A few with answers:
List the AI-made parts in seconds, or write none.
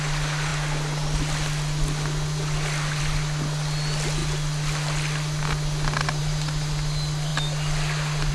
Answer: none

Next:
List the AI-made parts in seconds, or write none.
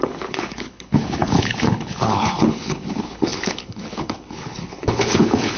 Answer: 0.0-5.6 (codec, HILCodec)